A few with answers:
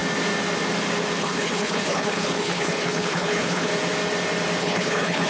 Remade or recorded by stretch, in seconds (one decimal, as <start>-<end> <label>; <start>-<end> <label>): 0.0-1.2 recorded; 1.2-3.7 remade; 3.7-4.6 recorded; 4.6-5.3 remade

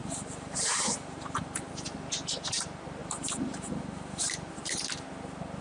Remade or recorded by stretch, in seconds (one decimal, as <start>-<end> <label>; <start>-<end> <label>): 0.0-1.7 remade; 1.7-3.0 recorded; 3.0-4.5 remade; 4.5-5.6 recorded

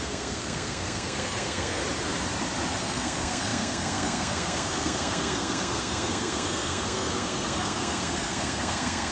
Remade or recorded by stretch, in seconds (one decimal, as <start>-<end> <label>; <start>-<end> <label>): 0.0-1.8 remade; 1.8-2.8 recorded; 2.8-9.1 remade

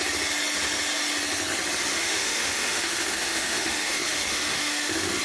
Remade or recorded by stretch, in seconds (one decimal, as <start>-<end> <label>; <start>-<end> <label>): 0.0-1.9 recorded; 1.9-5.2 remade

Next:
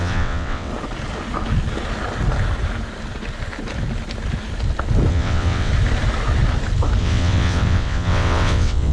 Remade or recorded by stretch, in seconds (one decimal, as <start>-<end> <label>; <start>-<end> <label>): 0.0-0.7 remade; 0.7-5.1 recorded; 5.1-5.7 remade; 5.7-7.0 recorded; 7.0-8.9 remade

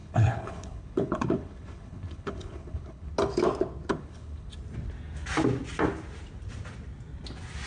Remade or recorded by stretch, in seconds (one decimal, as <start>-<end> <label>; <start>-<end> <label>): 0.0-3.1 remade; 3.1-3.9 recorded; 3.9-4.5 remade; 4.5-7.7 recorded

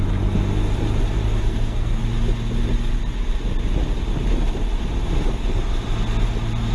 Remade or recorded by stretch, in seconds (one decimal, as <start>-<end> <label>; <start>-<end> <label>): 0.0-1.4 recorded; 1.4-2.0 remade; 2.0-6.7 recorded